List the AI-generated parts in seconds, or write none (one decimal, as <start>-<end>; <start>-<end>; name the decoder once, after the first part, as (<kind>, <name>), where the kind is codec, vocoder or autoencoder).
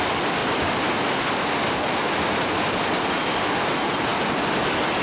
none